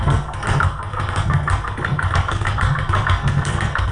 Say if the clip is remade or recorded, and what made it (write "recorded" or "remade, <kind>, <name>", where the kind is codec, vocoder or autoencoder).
remade, codec, SNAC